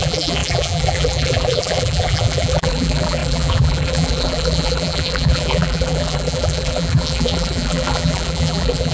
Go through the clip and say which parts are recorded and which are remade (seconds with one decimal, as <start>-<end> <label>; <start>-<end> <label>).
0.0-8.9 remade